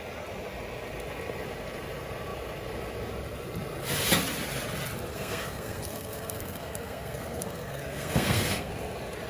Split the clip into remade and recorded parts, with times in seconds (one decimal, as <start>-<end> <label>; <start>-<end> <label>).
0.0-5.1 recorded; 5.1-8.7 remade; 8.7-9.3 recorded